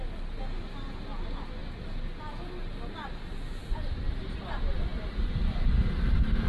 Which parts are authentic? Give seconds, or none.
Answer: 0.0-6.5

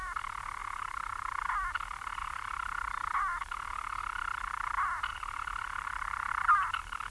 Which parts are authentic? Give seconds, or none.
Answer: 0.0-0.6; 1.7-2.2; 4.0-5.1; 6.3-7.1

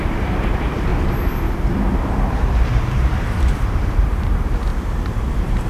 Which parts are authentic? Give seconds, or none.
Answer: 0.9-1.7

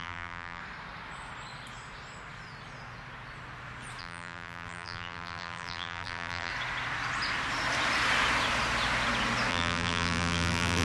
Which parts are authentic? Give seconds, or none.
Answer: 0.6-4.0; 6.5-9.5

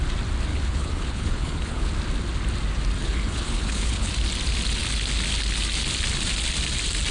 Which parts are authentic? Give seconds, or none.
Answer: 0.0-0.5; 1.9-3.0; 4.1-7.1

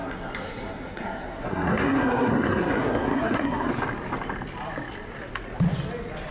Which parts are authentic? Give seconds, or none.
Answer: 3.7-6.3

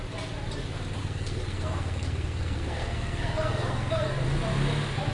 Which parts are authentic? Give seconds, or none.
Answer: 0.0-1.0; 4.1-5.1

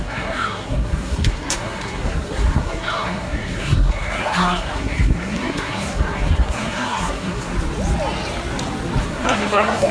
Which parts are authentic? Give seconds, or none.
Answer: 7.5-9.0